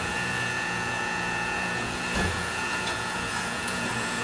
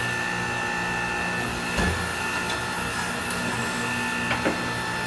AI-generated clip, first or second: first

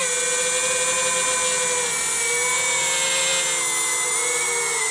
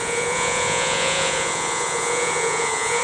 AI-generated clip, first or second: second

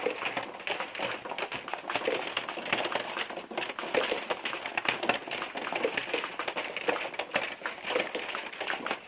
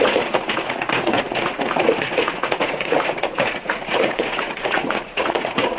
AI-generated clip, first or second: second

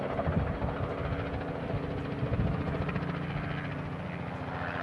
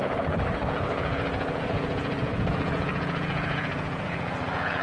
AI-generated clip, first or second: second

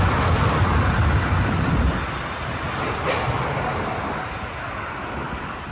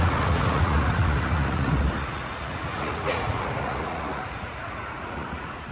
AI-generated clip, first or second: second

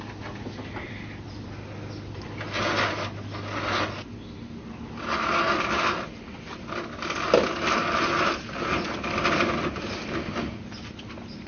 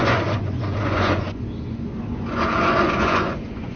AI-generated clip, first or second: second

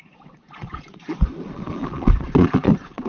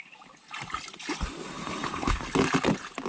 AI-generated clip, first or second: first